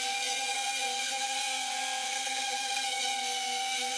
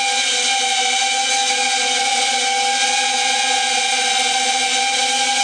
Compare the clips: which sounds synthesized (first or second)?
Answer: first